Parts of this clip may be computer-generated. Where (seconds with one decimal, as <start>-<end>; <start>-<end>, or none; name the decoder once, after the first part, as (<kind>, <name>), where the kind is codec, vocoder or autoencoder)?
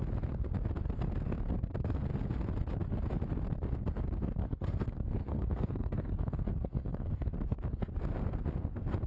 4.4-7.1 (codec, SNAC)